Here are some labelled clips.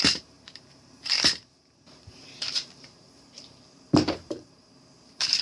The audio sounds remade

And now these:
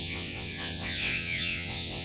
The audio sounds remade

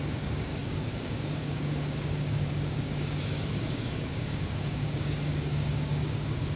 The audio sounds remade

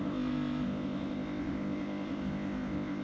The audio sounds remade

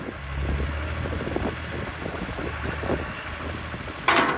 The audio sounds recorded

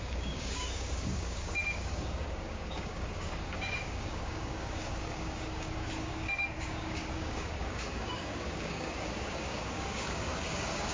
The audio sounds remade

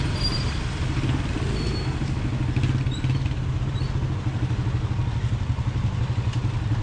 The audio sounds recorded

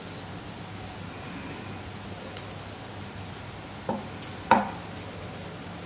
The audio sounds recorded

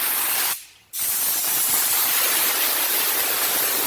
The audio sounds recorded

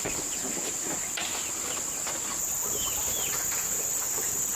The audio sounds recorded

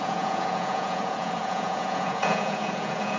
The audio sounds remade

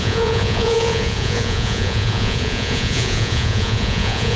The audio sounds remade